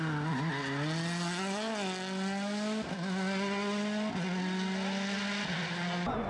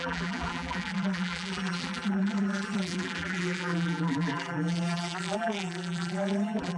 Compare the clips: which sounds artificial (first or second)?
second